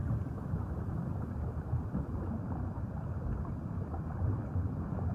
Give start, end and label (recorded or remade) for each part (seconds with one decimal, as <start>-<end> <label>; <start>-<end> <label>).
0.0-5.1 recorded